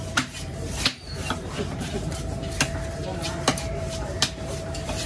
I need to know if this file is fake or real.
fake